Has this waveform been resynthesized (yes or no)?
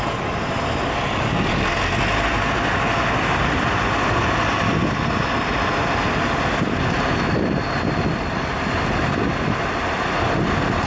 no